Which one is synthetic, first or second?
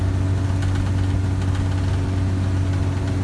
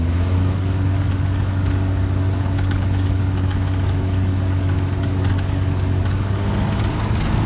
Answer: second